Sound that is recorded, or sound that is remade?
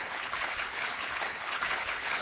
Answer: remade